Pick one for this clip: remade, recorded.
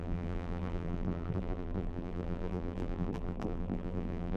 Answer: remade